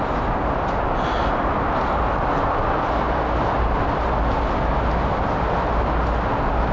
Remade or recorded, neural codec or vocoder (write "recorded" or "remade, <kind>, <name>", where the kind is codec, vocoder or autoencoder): recorded